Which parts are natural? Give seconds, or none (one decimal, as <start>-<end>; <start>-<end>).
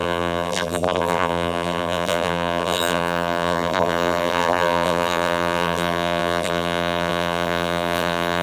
none